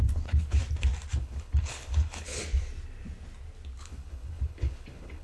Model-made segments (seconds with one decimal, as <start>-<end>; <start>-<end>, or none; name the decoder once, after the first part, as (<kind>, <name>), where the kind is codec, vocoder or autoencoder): 0.0-0.6 (codec, HILCodec); 1.2-2.4; 3.8-5.2